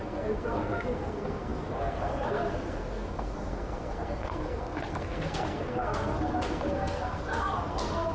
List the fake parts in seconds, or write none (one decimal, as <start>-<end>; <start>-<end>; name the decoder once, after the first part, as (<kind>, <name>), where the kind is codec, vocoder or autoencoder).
0.0-8.1 (codec, SNAC)